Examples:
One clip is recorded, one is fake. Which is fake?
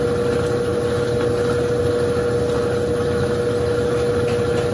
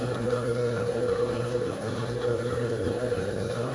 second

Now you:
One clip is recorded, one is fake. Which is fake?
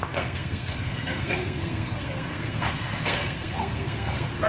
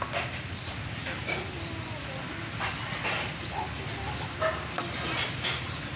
first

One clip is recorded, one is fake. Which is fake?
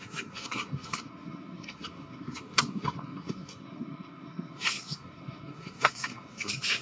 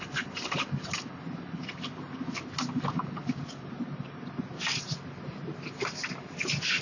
first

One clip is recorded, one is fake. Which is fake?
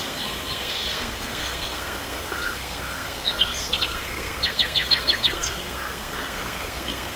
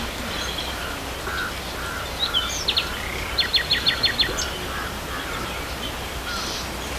first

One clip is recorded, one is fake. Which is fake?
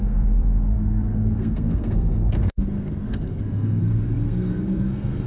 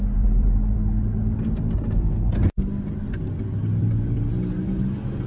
first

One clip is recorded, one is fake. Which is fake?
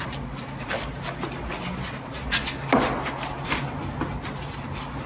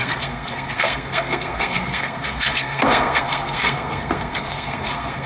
second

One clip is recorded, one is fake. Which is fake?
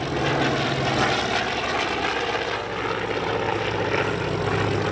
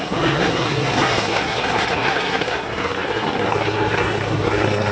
second